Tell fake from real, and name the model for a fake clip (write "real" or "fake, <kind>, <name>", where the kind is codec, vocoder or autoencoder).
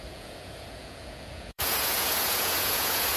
fake, vocoder, Vocos